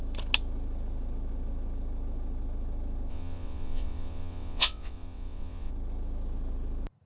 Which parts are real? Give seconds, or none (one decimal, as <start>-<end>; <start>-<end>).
0.0-3.1; 5.7-7.0